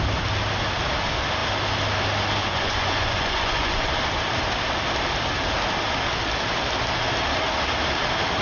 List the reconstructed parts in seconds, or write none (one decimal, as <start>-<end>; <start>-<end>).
2.4-3.9